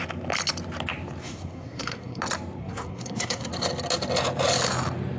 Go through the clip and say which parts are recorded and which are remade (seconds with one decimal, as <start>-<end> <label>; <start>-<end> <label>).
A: 0.0-1.2 recorded; 1.2-2.2 remade; 2.2-2.6 recorded; 2.6-3.5 remade; 3.5-5.2 recorded